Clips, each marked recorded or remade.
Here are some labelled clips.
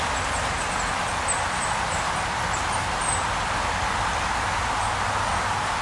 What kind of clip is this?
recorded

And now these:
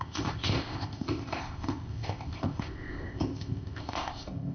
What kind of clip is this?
remade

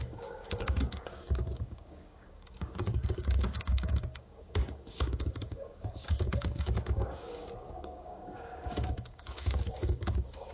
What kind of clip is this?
remade